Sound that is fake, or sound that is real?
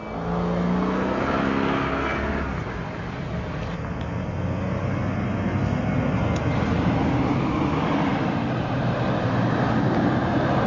real